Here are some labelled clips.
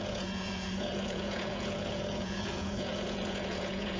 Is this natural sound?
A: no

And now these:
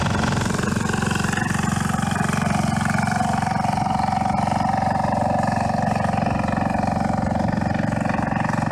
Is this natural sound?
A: yes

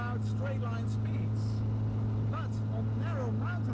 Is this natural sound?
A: yes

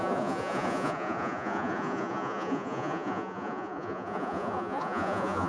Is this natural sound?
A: no